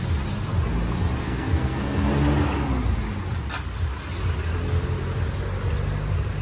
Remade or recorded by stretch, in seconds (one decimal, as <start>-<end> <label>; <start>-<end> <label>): 0.0-1.2 recorded; 1.2-2.1 remade; 2.1-6.4 recorded